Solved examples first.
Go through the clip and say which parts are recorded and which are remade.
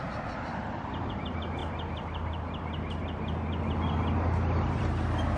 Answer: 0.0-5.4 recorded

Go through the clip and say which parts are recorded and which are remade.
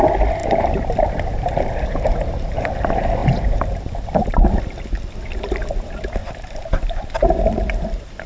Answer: 0.0-0.4 recorded; 0.4-2.7 remade; 2.7-3.2 recorded; 3.2-4.6 remade; 4.6-6.2 recorded; 6.2-8.3 remade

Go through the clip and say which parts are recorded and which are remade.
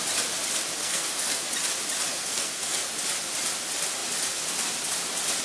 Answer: 0.0-0.8 recorded; 0.8-1.5 remade; 1.5-2.1 recorded; 2.1-2.9 remade; 2.9-5.4 recorded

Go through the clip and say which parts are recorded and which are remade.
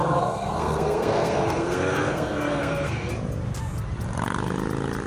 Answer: 0.0-3.1 remade; 3.1-5.1 recorded